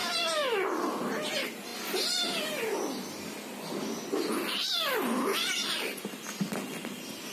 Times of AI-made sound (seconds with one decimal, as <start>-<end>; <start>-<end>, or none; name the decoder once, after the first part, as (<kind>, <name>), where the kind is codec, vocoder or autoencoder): none